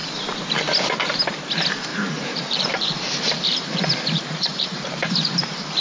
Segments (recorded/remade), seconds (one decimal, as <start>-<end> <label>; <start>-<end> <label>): 0.0-1.9 recorded; 1.9-5.8 remade